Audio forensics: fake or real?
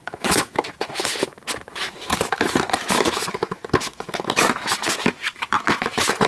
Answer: fake